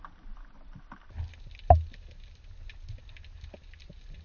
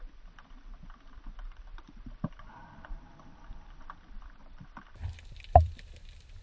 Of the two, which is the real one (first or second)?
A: first